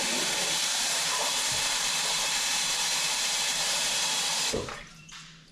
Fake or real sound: fake